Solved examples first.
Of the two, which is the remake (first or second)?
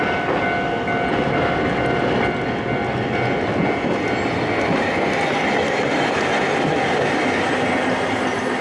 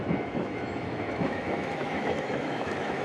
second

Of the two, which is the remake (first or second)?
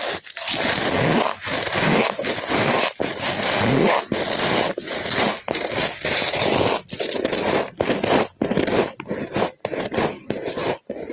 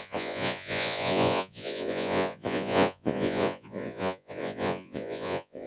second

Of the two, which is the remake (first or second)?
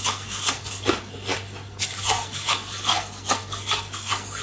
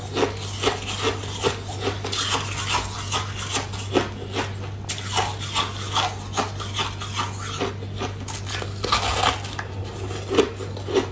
first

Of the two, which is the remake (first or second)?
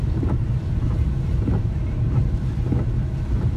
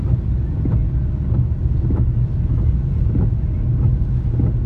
first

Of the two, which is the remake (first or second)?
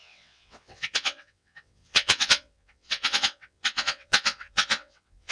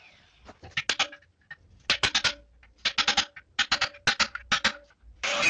first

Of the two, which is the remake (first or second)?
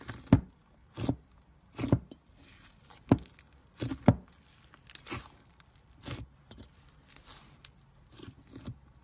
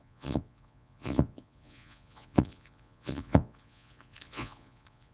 second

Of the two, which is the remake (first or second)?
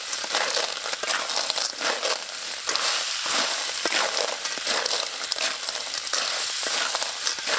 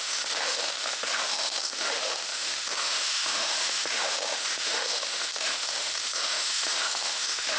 second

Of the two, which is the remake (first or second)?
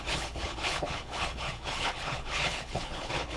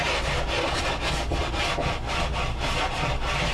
first